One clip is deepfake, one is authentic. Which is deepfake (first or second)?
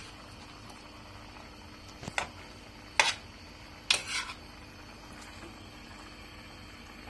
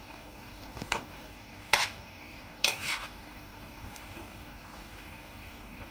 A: second